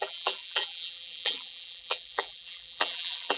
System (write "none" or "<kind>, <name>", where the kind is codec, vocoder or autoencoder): vocoder, BigVGAN v2